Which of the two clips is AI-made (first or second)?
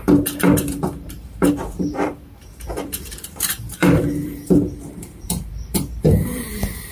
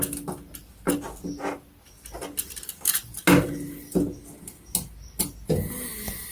first